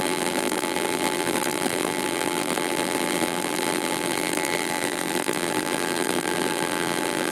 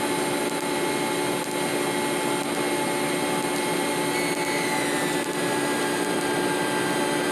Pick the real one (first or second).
second